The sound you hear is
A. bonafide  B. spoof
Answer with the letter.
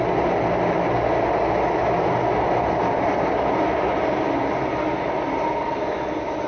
A